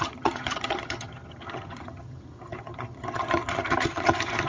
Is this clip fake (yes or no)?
yes